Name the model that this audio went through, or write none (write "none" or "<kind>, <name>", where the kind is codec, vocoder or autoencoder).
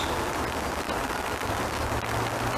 none